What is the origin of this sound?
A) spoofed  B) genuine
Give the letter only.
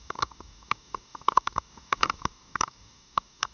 A